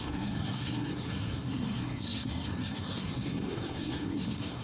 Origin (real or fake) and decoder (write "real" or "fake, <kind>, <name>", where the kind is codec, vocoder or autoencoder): fake, codec, SNAC